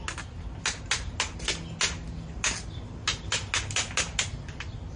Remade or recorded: recorded